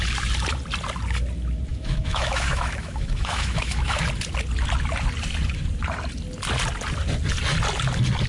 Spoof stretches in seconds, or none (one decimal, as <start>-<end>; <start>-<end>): 1.7-4.0